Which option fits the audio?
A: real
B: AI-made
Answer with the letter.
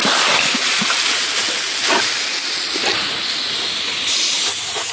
A